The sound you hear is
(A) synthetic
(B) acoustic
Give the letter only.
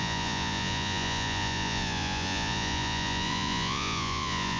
A